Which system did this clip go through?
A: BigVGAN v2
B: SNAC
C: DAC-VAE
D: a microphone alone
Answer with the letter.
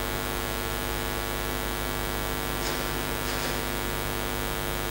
D